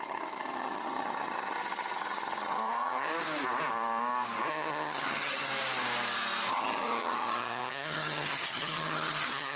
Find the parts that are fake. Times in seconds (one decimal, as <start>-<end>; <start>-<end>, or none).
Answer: 0.0-3.1; 4.5-5.5; 6.5-9.6